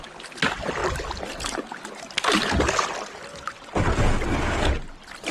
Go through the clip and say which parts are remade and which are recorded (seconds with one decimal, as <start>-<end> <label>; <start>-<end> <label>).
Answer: 0.0-5.3 recorded